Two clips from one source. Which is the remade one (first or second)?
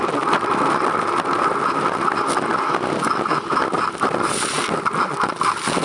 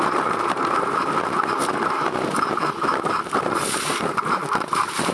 second